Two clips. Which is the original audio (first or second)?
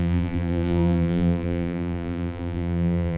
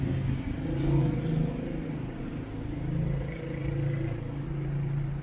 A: second